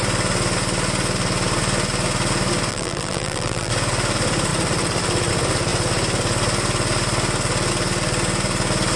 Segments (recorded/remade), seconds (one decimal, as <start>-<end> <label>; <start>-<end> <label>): 0.0-2.7 recorded; 2.7-3.7 remade; 3.7-9.0 recorded